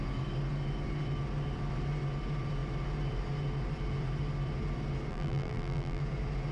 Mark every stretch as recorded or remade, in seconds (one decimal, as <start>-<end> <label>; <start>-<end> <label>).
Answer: 0.0-5.1 recorded; 5.1-6.0 remade; 6.0-6.5 recorded